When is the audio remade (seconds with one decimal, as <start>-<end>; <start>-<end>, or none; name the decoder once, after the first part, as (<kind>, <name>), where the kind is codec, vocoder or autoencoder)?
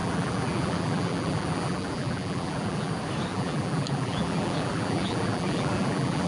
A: 0.0-2.9 (vocoder, BigVGAN v2); 3.3-6.3